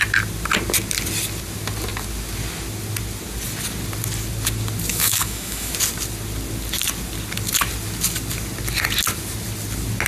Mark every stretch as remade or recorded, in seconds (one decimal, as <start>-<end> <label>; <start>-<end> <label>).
0.0-4.9 recorded; 4.9-5.7 remade; 5.7-10.1 recorded

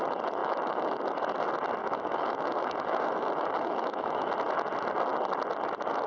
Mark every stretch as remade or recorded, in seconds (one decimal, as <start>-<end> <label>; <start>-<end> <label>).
0.0-0.4 recorded; 0.4-1.0 remade; 1.0-1.8 recorded; 1.8-4.3 remade; 4.3-6.1 recorded

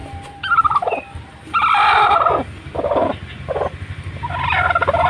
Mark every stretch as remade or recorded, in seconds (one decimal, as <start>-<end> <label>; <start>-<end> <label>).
0.0-5.1 recorded

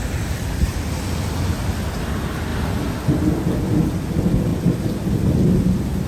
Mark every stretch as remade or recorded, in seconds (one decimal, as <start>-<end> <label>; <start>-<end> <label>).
0.0-6.1 recorded

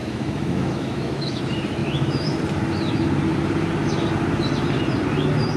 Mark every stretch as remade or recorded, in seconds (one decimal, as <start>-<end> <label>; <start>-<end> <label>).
0.0-1.4 remade; 1.4-1.8 recorded; 1.8-2.4 remade; 2.4-5.6 recorded